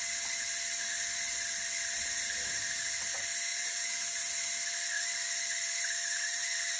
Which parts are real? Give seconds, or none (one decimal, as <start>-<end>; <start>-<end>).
0.0-3.5; 4.3-6.8